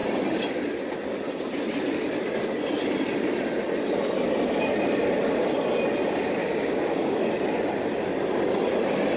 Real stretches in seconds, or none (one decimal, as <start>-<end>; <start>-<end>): 0.0-6.4; 7.3-9.2